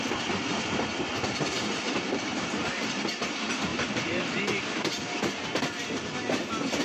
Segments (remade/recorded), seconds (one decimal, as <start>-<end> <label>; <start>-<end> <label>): 0.0-1.1 recorded; 1.1-2.6 remade; 2.6-3.7 recorded; 3.7-4.6 remade; 4.6-6.8 recorded